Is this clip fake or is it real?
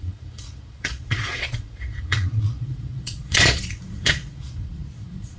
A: fake